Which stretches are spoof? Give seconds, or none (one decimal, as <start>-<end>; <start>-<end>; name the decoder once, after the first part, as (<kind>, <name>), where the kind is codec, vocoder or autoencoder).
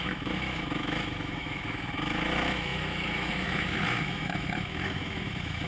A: 0.0-5.7 (autoencoder, DAC-VAE)